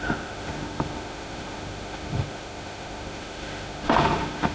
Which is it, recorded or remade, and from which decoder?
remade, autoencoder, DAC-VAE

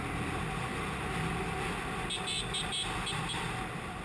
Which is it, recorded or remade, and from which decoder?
recorded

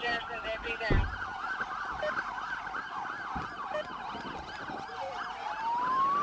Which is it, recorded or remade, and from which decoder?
recorded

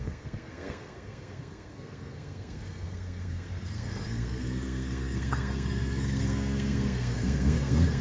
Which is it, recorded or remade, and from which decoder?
remade, codec, SNAC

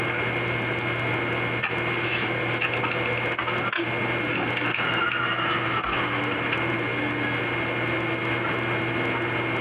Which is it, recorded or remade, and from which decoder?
recorded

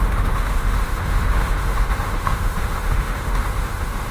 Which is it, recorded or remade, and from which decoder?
remade, autoencoder, DAC-VAE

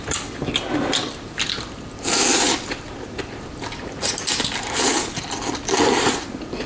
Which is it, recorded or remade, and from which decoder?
remade, vocoder, BigVGAN v2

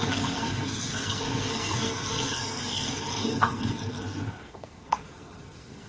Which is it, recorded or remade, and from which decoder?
remade, codec, SNAC